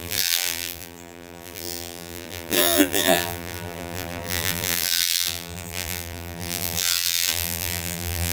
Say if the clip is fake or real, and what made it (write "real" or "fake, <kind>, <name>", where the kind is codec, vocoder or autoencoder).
fake, vocoder, BigVGAN v2